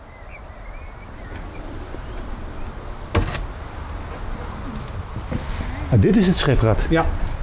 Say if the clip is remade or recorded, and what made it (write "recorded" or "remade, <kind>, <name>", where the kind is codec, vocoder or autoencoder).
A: recorded